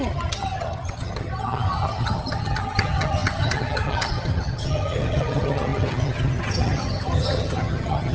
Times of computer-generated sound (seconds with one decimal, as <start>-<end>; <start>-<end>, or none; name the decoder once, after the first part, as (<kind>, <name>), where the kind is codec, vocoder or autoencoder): 0.0-8.1 (vocoder, HiFi-GAN)